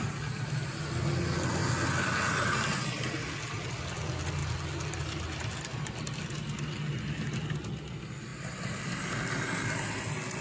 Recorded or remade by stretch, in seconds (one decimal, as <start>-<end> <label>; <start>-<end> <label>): 0.0-10.4 recorded